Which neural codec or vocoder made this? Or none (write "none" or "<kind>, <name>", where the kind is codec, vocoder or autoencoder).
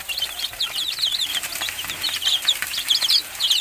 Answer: none